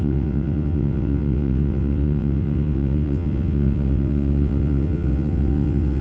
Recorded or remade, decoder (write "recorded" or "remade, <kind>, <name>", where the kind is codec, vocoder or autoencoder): remade, vocoder, WaveNeXt